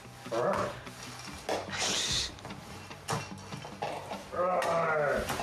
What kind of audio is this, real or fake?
real